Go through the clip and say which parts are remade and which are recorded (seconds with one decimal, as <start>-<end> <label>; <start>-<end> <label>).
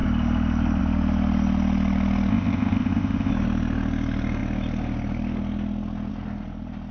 0.0-2.3 recorded; 2.3-3.3 remade; 3.3-6.9 recorded